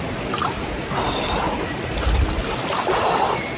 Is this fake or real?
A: real